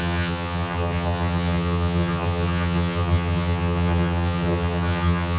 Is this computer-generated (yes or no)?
yes